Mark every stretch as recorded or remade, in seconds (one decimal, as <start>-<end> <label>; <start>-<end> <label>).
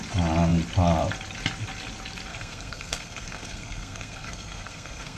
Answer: 0.0-2.3 recorded; 2.3-5.2 remade